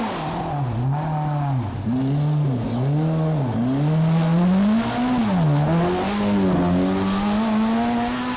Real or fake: real